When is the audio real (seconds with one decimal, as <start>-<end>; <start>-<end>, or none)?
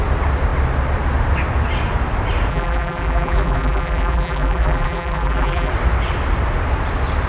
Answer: 0.0-2.5; 5.7-7.3